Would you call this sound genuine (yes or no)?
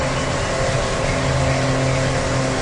yes